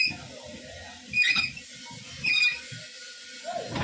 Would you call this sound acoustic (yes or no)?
yes